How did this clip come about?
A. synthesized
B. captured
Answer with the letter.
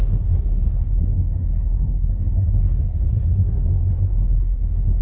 A